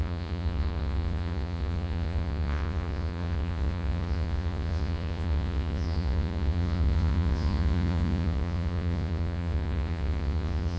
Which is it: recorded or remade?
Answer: remade